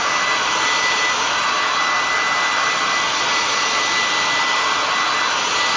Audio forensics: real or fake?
real